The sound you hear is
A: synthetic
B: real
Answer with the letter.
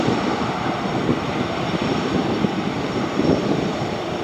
A